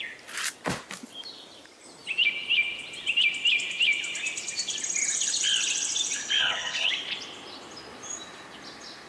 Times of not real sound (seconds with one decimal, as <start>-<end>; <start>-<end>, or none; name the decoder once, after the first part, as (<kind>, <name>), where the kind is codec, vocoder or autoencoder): 6.4-6.9 (codec, HILCodec)